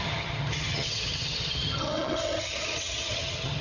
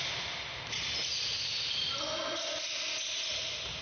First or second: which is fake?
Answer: first